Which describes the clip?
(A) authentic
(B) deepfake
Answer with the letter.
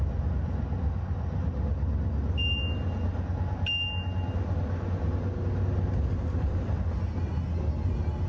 A